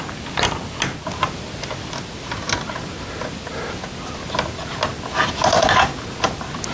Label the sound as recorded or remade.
recorded